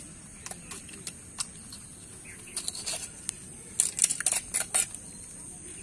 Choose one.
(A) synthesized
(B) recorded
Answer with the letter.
B